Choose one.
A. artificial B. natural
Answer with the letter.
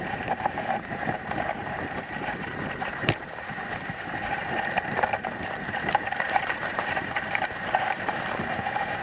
A